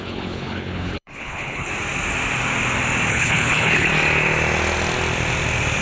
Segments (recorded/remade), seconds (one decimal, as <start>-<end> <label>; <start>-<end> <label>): 0.0-1.7 remade; 1.7-3.1 recorded; 3.1-3.9 remade; 3.9-5.8 recorded